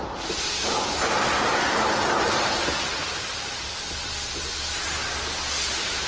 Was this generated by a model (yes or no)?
no